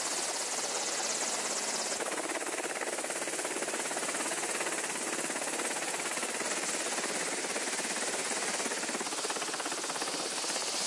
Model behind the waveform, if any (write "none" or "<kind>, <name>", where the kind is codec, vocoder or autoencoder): none